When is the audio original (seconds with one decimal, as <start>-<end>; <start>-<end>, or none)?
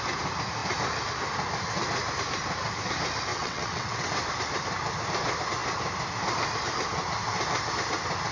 0.0-3.3; 4.1-8.3